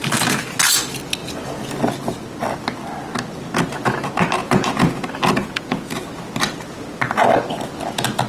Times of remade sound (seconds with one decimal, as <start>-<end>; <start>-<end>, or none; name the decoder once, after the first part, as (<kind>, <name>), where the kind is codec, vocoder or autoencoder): 4.4-5.0 (vocoder, Vocos); 5.4-5.9